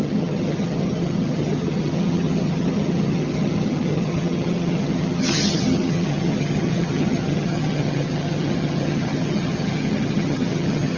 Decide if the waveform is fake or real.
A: fake